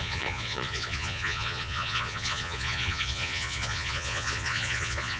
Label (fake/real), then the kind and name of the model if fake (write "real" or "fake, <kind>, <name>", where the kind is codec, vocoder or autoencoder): fake, vocoder, Vocos